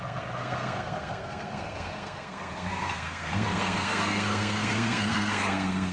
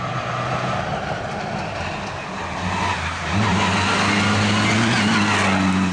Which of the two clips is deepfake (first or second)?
first